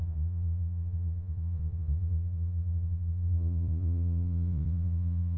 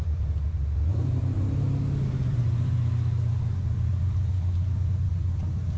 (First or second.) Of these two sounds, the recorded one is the second